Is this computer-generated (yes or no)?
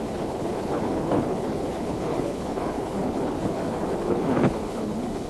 yes